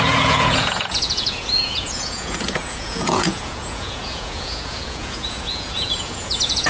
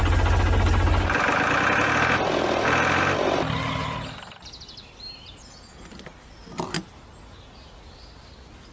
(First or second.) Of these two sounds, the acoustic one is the second